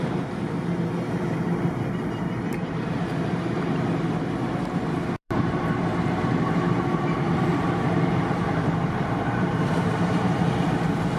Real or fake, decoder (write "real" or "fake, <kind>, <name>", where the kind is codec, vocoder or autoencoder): fake, vocoder, BigVGAN v2